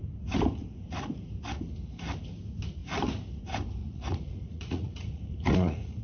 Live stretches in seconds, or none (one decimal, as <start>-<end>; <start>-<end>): 0.0-3.8